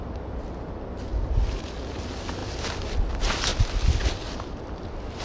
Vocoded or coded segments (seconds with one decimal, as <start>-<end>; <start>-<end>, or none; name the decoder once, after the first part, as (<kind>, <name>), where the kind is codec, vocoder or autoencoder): 1.1-1.7 (vocoder, BigVGAN v2); 2.4-3.0; 3.5-5.2